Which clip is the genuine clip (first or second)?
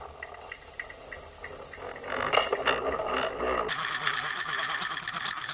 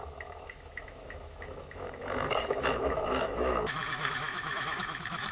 first